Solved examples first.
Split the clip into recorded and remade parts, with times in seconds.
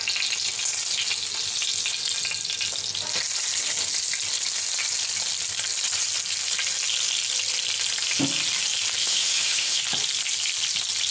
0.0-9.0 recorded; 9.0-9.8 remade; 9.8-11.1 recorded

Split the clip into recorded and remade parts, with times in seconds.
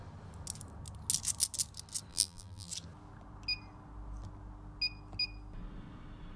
0.0-2.1 recorded; 2.1-2.7 remade; 2.7-6.4 recorded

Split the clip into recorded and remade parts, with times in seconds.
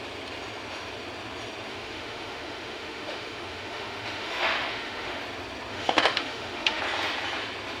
0.0-1.7 recorded; 1.7-5.2 remade; 5.2-5.7 recorded; 5.7-6.8 remade; 6.8-7.8 recorded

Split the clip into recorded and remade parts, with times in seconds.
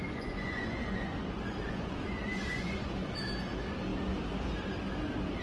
0.0-3.2 remade; 3.2-5.4 recorded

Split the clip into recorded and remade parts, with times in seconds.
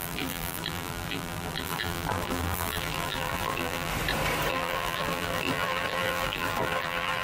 0.0-3.9 remade; 3.9-4.5 recorded; 4.5-7.2 remade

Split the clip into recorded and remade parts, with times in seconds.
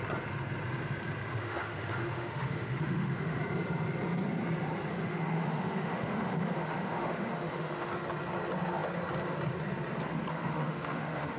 0.0-1.4 recorded; 1.4-3.4 remade; 3.4-4.9 recorded; 4.9-7.9 remade; 7.9-10.3 recorded; 10.3-11.4 remade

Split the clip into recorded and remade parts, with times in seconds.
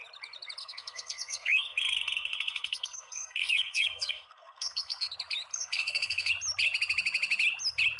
0.0-0.6 recorded; 0.6-5.1 remade; 5.1-5.5 recorded; 5.5-6.3 remade; 6.3-8.0 recorded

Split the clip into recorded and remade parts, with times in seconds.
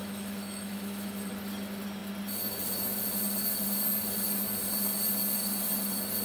0.0-1.3 remade; 1.3-6.2 recorded